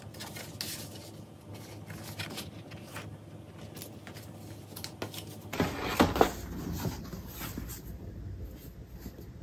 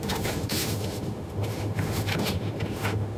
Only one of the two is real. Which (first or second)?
first